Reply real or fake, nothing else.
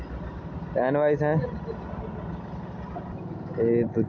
real